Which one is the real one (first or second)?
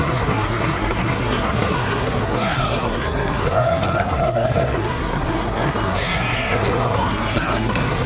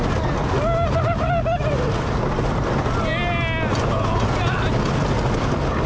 second